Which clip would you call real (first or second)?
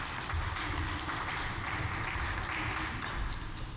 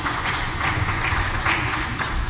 first